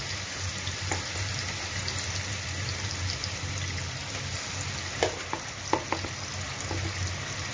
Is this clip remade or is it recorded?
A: recorded